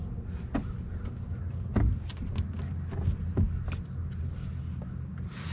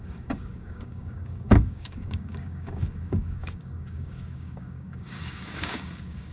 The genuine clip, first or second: first